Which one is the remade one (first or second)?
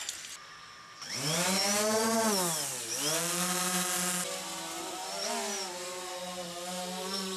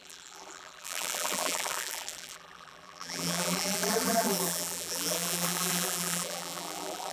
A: second